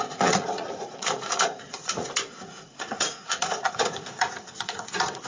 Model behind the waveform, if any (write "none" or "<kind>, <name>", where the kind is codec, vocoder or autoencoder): vocoder, Vocos